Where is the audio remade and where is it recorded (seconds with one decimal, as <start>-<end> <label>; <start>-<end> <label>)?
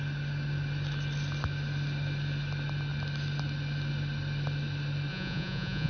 0.0-5.1 recorded; 5.1-5.9 remade